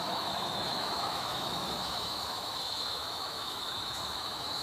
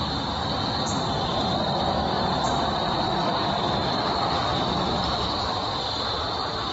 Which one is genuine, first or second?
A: second